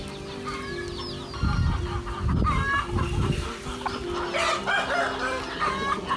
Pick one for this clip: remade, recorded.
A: recorded